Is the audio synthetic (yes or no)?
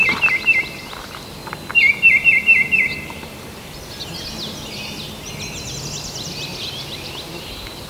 no